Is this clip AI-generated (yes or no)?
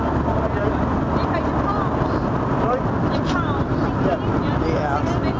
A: no